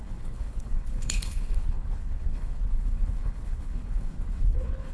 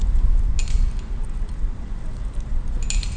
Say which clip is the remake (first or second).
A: first